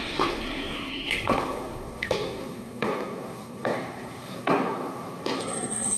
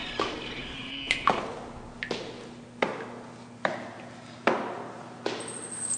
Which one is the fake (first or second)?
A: first